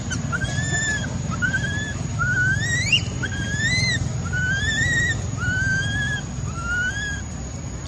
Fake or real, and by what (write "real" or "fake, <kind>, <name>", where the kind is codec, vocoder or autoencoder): real